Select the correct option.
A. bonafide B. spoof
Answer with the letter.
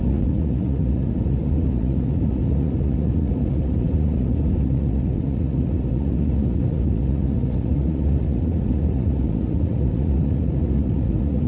B